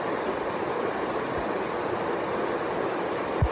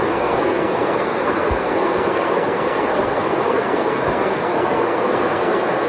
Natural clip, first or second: first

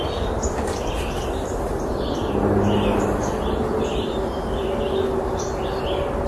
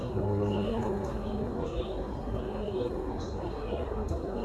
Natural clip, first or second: first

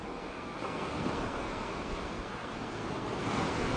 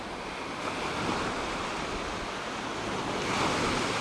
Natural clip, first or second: second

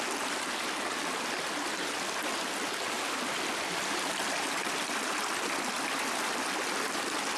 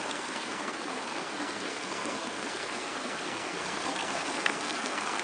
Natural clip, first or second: first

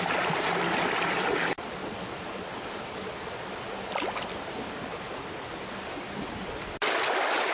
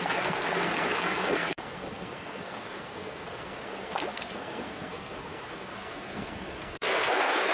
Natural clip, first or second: first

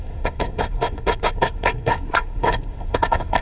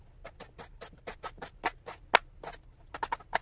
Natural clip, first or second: second